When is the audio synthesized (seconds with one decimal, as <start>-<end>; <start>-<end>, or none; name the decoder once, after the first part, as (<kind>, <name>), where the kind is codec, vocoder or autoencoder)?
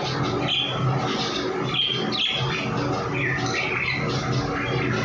none